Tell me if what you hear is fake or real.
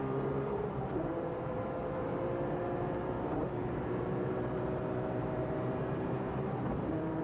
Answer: fake